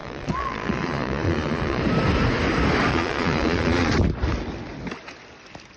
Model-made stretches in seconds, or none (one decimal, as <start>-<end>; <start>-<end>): 0.0-1.8; 2.9-3.9